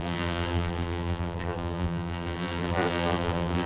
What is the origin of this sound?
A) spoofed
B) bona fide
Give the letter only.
A